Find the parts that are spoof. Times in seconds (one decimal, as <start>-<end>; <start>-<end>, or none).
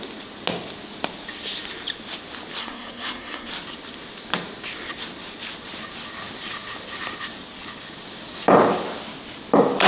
2.6-3.5